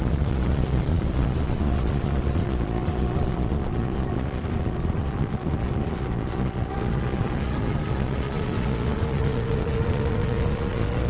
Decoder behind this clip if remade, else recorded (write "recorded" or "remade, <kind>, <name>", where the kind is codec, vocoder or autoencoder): remade, vocoder, Vocos